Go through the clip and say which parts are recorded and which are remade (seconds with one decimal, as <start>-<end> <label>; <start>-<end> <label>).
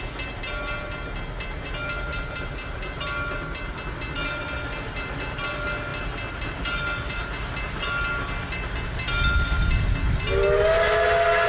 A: 0.0-11.5 recorded